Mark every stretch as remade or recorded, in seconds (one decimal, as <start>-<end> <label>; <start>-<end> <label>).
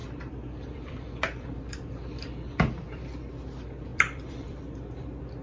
0.0-3.2 remade; 3.2-3.9 recorded; 3.9-4.6 remade; 4.6-5.4 recorded